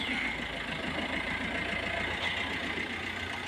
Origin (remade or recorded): recorded